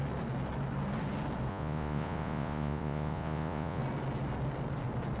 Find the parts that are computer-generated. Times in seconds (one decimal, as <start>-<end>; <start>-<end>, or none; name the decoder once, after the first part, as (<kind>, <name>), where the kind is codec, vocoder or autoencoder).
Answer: 1.5-3.8 (vocoder, Vocos)